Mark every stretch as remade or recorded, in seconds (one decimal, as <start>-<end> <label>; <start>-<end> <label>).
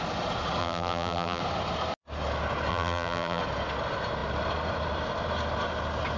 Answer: 0.0-0.6 recorded; 0.6-1.4 remade; 1.4-2.7 recorded; 2.7-3.4 remade; 3.4-6.2 recorded